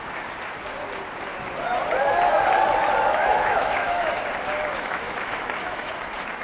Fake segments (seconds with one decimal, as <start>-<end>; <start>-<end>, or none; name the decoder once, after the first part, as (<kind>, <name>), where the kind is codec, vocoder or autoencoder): 3.2-4.1 (autoencoder, DAC-VAE); 4.7-5.9